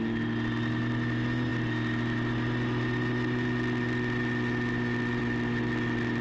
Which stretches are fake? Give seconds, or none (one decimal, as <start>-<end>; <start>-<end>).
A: none